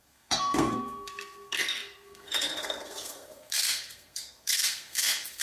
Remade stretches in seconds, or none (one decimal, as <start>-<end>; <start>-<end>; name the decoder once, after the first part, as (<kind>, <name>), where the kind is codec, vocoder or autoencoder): 0.0-5.4 (codec, SNAC)